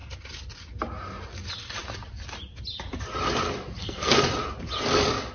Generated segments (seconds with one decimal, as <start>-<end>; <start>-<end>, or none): 3.8-4.3